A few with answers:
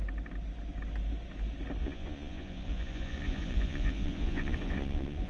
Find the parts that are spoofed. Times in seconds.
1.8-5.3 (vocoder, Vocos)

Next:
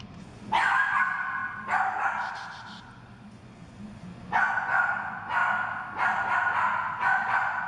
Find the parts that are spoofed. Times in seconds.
0.0-1.4 (vocoder, Vocos); 2.8-5.4; 7.0-7.7